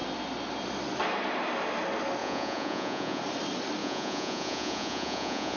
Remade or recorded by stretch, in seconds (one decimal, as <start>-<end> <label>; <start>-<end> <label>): 0.0-2.2 recorded; 2.2-3.2 remade; 3.2-3.8 recorded; 3.8-5.6 remade